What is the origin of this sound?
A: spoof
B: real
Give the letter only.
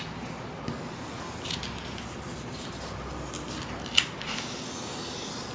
B